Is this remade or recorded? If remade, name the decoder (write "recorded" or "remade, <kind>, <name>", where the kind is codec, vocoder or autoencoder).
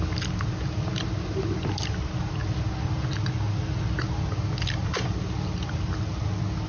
recorded